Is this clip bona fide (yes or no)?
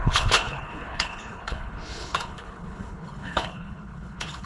no